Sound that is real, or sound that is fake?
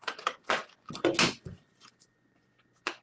fake